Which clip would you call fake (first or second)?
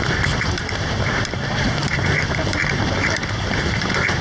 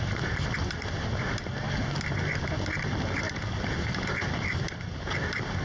first